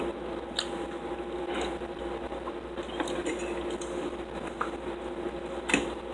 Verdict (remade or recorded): recorded